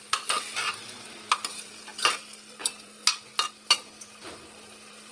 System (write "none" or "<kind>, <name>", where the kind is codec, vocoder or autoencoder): none